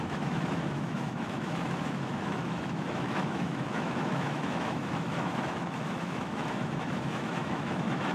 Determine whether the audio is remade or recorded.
remade